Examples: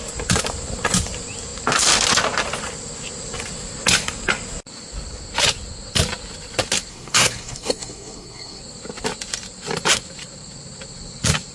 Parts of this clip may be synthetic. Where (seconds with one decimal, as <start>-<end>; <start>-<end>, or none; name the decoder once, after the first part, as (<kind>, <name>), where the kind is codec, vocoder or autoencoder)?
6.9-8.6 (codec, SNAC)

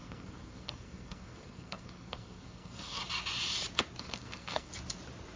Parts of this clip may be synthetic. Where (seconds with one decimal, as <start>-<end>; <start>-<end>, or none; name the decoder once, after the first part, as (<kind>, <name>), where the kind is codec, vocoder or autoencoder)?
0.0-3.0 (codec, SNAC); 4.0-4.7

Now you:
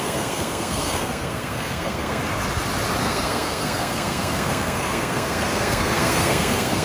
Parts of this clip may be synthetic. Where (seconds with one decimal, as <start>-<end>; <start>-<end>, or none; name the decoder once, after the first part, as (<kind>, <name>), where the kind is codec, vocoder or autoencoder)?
0.0-2.2 (codec, SNAC); 3.0-6.8